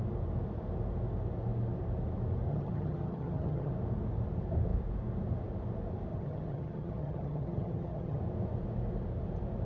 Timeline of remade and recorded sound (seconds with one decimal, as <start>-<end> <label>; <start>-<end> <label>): 0.0-2.5 recorded; 2.5-3.7 remade; 3.7-6.1 recorded; 6.1-8.2 remade; 8.2-9.7 recorded